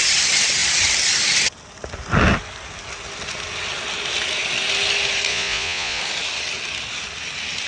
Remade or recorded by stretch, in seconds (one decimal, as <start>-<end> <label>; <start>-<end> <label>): 0.0-5.3 recorded; 5.3-6.0 remade; 6.0-7.7 recorded